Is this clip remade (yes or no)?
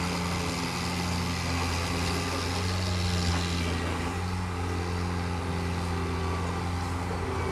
no